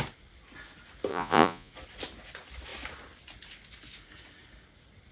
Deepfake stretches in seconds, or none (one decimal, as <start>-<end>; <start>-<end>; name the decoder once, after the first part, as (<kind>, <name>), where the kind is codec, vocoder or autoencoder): 1.1-1.7 (vocoder, Vocos)